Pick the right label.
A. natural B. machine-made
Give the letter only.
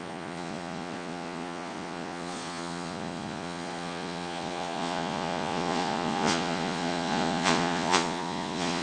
B